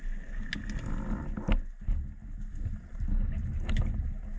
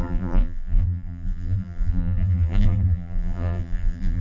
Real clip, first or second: first